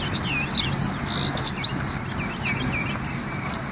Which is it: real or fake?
real